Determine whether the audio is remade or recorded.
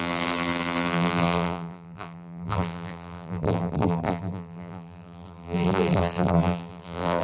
remade